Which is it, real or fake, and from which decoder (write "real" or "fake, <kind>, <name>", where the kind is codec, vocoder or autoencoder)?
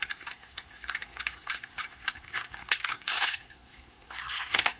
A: fake, codec, SNAC